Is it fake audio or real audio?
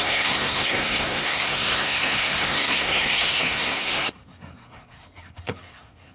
fake